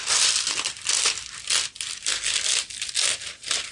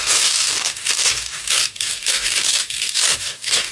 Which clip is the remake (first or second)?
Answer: second